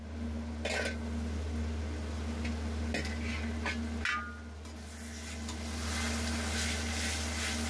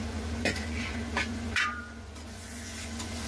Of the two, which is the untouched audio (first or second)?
first